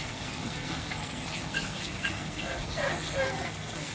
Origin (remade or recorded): remade